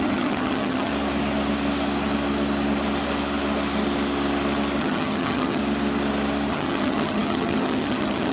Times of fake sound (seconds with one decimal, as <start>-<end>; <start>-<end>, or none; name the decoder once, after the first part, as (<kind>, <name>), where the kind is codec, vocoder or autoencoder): 0.0-0.9 (vocoder, HiFi-GAN); 4.8-5.6; 6.5-8.3